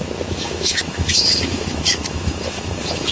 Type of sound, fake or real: fake